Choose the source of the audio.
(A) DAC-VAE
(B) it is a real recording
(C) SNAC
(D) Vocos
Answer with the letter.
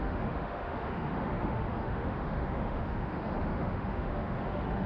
A